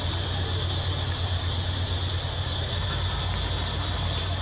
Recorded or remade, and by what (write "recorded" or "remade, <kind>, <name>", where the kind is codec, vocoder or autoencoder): recorded